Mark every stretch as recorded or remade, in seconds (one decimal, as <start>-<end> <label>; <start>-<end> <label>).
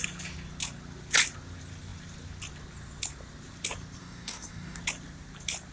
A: 0.0-4.0 recorded; 4.0-4.8 remade; 4.8-5.7 recorded